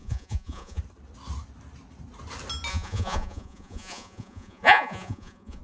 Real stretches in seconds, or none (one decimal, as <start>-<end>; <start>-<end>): 0.8-2.7